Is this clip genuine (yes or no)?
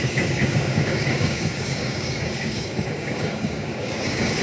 no